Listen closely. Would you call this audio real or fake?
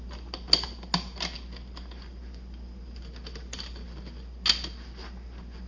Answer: real